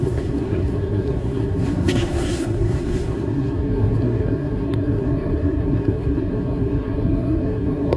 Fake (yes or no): yes